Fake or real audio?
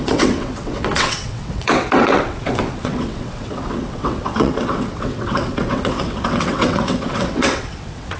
fake